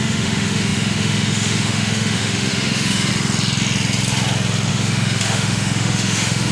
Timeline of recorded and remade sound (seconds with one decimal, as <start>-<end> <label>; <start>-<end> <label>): 0.0-3.1 remade; 3.1-4.7 recorded; 4.7-6.5 remade